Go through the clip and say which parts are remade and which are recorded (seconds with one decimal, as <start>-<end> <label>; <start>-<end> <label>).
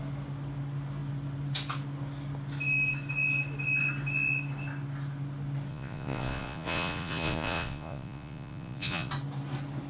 0.0-5.7 recorded; 5.7-9.1 remade; 9.1-9.9 recorded